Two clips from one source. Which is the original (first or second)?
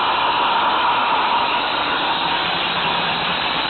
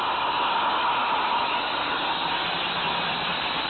second